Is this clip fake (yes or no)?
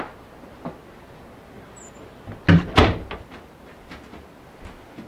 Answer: no